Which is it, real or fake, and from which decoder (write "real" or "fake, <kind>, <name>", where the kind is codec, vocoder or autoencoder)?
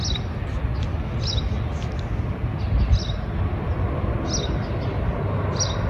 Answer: real